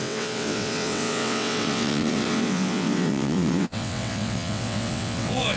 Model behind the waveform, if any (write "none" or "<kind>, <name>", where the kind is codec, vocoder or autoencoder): vocoder, WaveNeXt